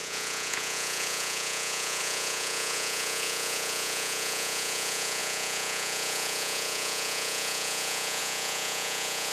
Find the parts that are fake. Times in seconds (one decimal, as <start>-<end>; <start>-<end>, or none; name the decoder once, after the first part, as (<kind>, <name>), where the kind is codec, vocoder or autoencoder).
0.0-9.3 (vocoder, Vocos)